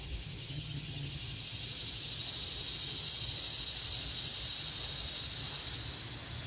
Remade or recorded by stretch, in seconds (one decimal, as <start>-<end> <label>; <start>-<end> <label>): 0.0-0.4 recorded; 0.4-1.1 remade; 1.1-6.5 recorded